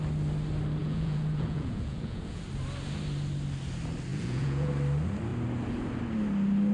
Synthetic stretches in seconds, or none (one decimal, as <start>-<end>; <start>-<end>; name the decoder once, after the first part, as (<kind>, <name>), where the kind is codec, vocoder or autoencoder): 0.8-2.4 (vocoder, Vocos); 4.1-4.7